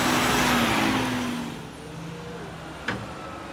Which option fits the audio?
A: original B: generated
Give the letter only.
A